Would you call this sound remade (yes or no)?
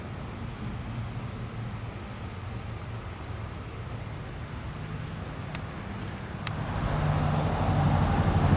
no